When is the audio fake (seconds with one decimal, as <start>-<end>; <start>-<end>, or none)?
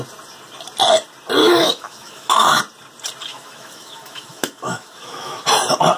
1.4-2.6; 3.3-5.4